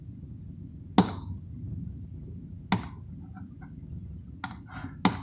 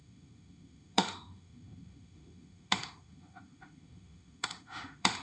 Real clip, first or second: first